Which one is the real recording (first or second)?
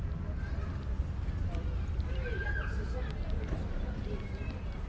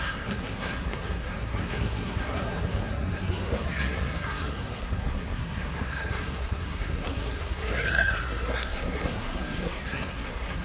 first